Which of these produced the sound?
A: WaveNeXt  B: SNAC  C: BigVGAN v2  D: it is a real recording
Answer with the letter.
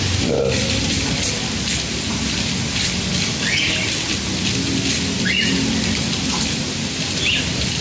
D